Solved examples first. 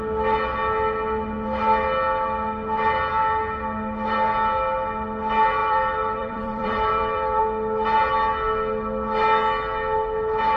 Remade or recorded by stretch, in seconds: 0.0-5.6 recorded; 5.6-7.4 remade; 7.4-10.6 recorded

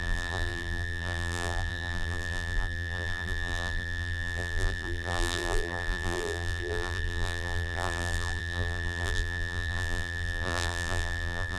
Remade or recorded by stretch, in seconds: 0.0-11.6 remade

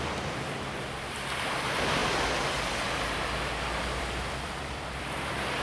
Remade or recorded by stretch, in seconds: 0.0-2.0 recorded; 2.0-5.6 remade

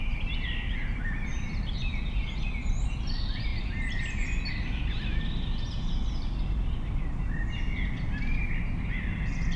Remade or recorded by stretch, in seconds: 0.0-0.9 recorded; 0.9-2.5 remade; 2.5-9.6 recorded